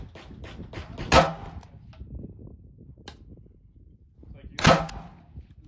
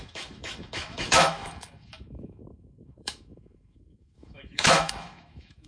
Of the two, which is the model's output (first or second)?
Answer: second